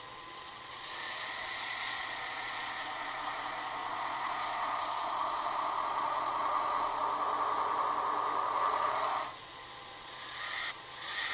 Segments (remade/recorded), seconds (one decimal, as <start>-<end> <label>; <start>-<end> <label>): 0.0-7.0 remade; 7.0-8.7 recorded; 8.7-11.3 remade